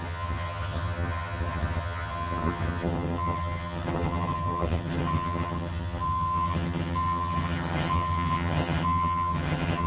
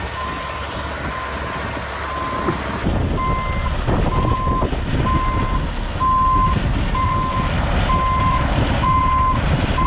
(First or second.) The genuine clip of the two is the second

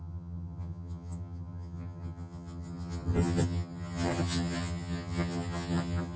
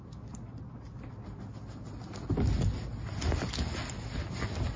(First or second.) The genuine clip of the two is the second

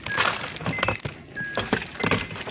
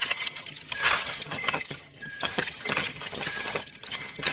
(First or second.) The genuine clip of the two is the first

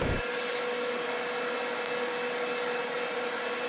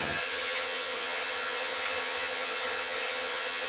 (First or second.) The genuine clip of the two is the first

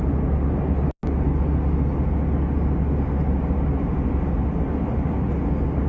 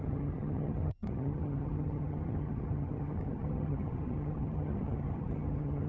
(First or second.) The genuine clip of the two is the first